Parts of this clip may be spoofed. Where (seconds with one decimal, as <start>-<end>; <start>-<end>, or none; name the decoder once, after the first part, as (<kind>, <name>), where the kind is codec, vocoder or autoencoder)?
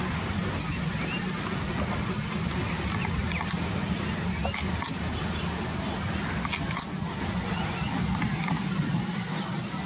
none